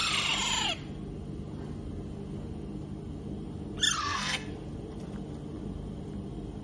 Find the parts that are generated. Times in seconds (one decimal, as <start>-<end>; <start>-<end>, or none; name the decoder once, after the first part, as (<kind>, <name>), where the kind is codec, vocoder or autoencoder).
4.0-4.5 (codec, SNAC)